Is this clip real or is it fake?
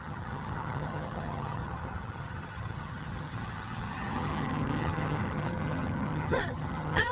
fake